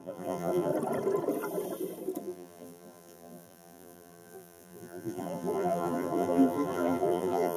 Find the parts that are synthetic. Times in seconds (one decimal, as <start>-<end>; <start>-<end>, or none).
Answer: 0.0-0.7; 2.2-7.6